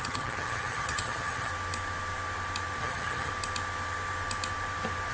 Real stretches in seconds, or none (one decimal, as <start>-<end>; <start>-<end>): 1.5-2.8; 3.3-5.1